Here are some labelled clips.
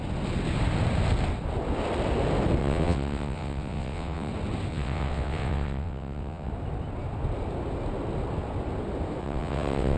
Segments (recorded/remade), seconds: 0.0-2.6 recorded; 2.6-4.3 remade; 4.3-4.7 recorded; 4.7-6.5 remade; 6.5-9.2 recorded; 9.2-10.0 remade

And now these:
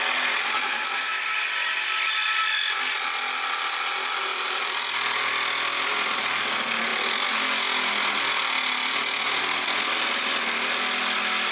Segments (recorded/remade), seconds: 0.0-4.3 recorded; 4.3-4.9 remade; 4.9-11.5 recorded